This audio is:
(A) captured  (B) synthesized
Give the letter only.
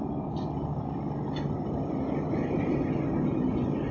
A